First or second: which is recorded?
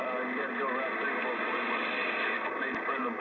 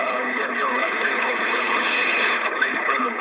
first